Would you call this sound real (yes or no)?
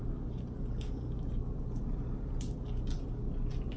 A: yes